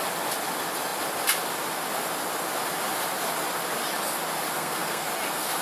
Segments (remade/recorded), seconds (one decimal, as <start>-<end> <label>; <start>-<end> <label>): 0.0-4.5 recorded; 4.5-5.1 remade; 5.1-5.6 recorded